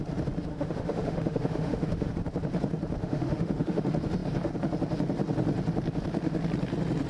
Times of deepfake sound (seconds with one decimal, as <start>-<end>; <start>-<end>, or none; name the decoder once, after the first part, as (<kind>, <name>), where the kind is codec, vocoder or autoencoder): 0.5-2.1 (autoencoder, DAC-VAE); 3.0-3.8